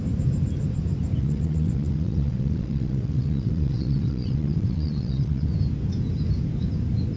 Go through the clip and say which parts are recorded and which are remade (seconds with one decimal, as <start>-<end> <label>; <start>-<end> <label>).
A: 0.0-1.2 recorded; 1.2-5.5 remade; 5.5-7.2 recorded